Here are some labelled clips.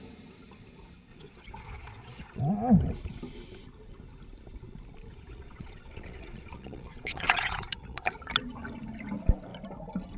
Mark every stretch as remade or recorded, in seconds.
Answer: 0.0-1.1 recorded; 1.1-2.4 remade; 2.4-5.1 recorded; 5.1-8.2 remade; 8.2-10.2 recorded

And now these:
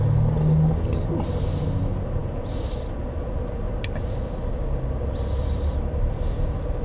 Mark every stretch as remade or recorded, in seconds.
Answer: 0.0-6.8 recorded

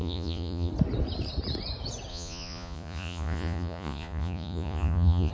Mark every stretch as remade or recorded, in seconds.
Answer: 0.0-0.7 remade; 0.7-2.1 recorded; 2.1-5.3 remade